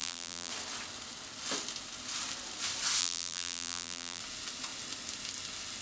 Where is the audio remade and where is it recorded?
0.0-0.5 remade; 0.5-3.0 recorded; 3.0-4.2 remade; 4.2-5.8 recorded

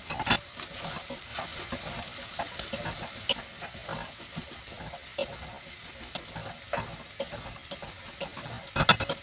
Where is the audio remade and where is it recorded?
0.0-9.2 recorded

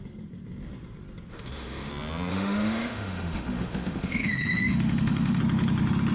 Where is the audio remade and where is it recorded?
0.0-1.3 recorded; 1.3-1.9 remade; 1.9-2.3 recorded; 2.3-5.4 remade; 5.4-6.1 recorded

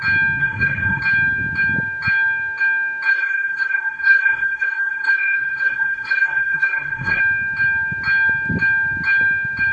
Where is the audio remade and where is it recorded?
0.0-0.4 recorded; 0.4-1.0 remade; 1.0-3.1 recorded; 3.1-7.2 remade; 7.2-9.7 recorded

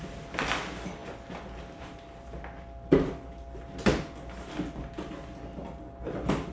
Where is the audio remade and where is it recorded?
0.0-6.5 recorded